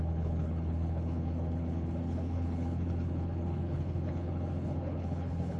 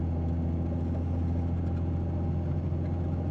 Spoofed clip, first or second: first